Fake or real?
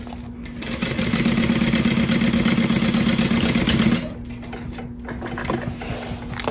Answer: real